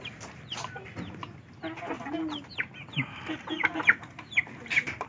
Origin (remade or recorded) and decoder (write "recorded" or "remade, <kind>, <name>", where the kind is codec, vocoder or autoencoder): recorded